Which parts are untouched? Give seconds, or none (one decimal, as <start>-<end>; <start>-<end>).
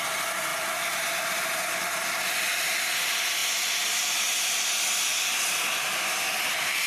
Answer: 0.0-6.9